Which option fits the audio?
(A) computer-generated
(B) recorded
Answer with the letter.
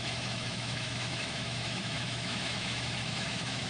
A